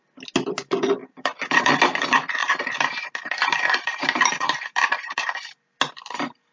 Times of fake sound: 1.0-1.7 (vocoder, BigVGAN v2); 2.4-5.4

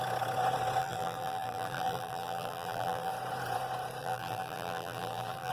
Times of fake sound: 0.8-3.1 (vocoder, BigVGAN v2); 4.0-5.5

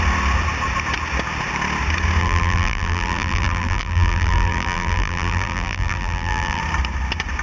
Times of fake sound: 2.2-6.6 (vocoder, BigVGAN v2)